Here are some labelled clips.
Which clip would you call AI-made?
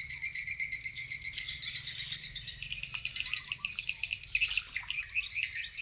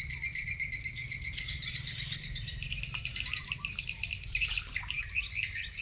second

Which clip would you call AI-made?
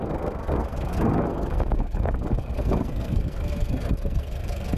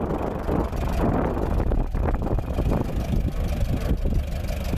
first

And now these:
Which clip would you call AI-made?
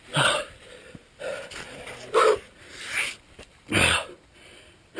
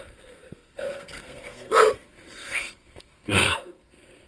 second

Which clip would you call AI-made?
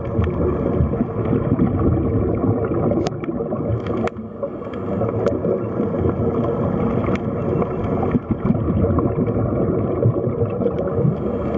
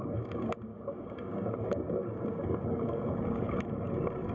second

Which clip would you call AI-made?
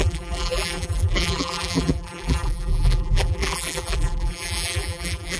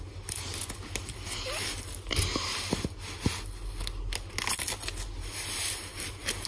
first